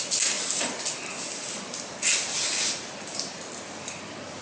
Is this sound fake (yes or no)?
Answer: no